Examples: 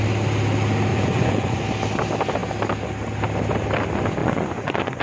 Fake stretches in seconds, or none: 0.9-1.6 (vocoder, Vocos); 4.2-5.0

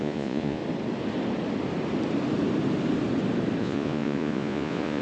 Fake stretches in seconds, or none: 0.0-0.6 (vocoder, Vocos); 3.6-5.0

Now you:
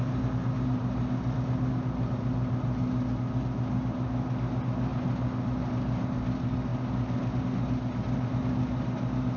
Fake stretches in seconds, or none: none

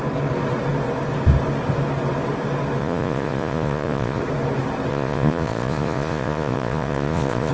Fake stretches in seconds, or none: 2.8-4.2 (vocoder, Vocos); 4.9-7.5